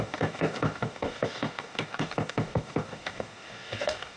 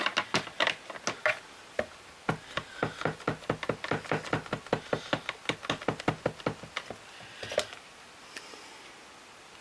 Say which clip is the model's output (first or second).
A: first